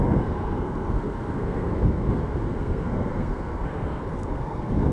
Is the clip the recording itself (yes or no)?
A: no